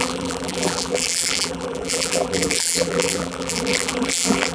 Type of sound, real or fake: fake